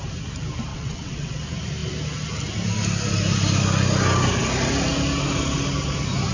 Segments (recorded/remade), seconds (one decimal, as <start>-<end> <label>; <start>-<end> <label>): 0.0-0.7 recorded; 0.7-1.4 remade; 1.4-6.3 recorded